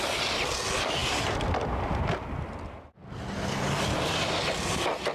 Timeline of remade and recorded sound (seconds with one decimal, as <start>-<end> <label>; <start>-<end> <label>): 0.0-5.1 recorded